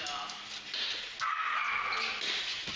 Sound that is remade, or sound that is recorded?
recorded